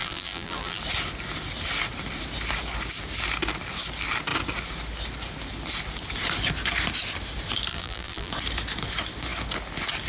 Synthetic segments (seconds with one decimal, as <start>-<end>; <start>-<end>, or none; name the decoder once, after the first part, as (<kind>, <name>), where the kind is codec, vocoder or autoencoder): 0.0-0.8 (vocoder, BigVGAN v2); 7.7-8.3